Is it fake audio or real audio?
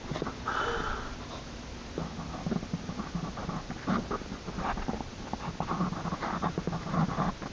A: real